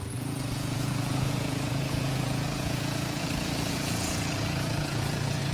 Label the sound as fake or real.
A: fake